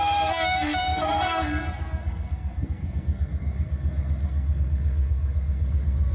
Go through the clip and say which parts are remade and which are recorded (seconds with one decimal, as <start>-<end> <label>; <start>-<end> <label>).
0.0-6.1 remade